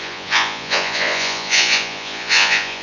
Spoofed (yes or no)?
yes